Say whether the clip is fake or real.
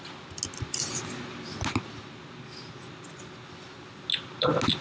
real